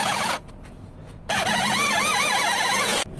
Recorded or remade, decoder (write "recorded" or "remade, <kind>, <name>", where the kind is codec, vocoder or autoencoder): remade, vocoder, Vocos